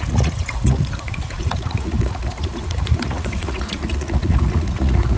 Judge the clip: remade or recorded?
remade